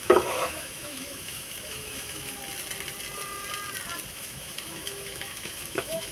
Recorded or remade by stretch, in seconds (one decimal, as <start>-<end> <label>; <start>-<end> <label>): 0.0-2.4 remade; 2.4-4.1 recorded; 4.1-6.1 remade